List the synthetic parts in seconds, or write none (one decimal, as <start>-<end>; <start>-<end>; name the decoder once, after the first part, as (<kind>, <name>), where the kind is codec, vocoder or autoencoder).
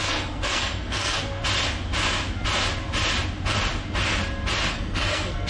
0.0-1.4 (codec, SNAC); 4.7-5.5